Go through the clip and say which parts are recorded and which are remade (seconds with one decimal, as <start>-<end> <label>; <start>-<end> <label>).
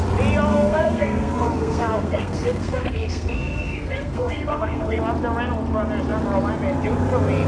0.0-0.5 recorded; 0.5-5.0 remade; 5.0-7.5 recorded